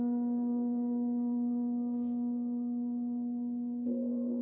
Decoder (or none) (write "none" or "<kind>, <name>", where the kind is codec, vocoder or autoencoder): codec, SNAC